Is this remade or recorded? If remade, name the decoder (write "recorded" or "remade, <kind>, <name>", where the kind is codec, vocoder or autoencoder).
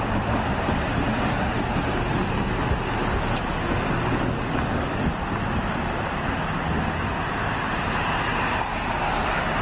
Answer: recorded